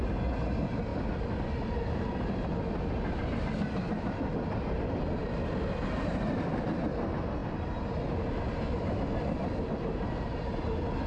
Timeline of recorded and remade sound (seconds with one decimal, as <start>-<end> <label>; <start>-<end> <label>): 0.0-11.1 recorded